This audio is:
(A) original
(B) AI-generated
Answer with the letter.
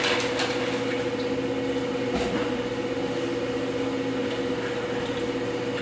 A